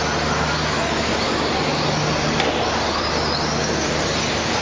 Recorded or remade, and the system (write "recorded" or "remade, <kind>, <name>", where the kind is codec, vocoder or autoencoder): recorded